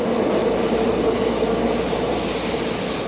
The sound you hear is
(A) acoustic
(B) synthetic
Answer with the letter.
A